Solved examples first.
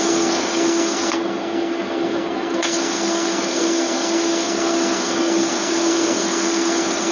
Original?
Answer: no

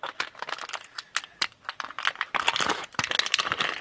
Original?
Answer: no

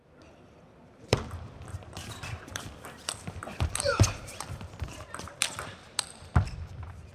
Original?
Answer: no